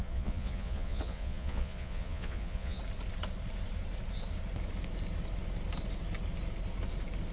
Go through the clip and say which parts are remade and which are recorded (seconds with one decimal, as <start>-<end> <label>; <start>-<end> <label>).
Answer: 0.0-2.8 remade; 2.8-7.3 recorded